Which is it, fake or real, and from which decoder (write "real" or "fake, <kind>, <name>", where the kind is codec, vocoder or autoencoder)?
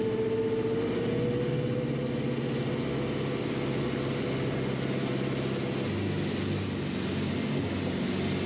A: real